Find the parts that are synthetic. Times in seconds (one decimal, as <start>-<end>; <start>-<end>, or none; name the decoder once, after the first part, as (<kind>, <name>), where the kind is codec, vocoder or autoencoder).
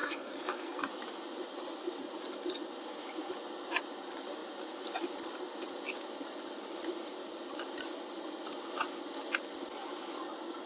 0.0-0.8 (codec, SNAC)